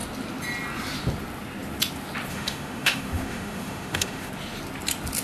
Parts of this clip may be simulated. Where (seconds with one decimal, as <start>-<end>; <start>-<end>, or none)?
2.3-4.3